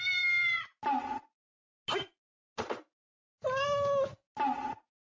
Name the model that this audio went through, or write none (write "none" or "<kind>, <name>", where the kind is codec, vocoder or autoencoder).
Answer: none